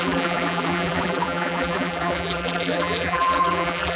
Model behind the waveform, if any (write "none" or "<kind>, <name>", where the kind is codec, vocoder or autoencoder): vocoder, BigVGAN v2